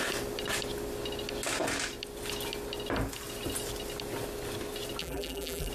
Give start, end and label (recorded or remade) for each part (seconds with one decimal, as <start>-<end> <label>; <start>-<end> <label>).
0.0-5.0 recorded; 5.0-5.7 remade